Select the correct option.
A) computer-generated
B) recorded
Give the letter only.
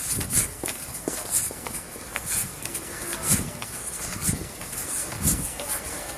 A